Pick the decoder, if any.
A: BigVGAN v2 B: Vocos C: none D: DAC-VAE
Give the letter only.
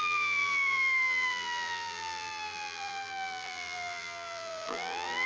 A